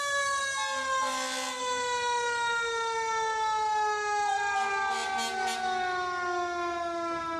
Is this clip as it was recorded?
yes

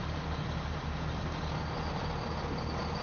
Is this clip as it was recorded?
yes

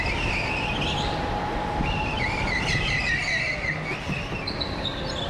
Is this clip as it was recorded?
yes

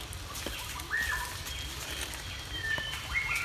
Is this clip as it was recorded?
yes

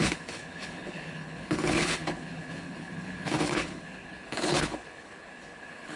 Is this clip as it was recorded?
no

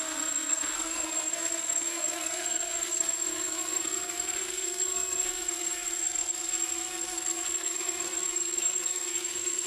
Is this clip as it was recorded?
no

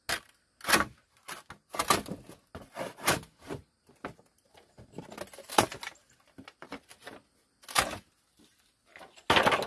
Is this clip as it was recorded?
yes